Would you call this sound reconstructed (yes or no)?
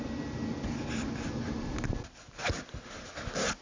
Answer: no